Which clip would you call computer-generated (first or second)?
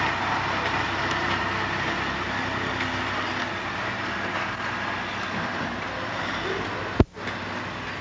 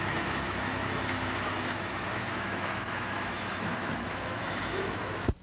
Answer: second